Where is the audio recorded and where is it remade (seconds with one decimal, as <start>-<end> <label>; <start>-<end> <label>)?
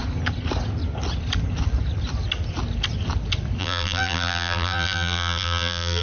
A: 0.0-3.6 recorded; 3.6-6.0 remade